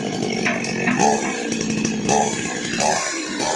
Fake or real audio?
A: real